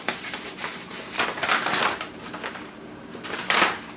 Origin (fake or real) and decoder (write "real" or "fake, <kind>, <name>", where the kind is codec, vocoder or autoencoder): fake, vocoder, BigVGAN v2